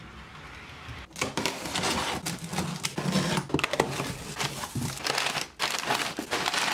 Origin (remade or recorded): recorded